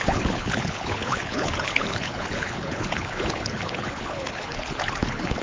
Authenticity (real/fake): fake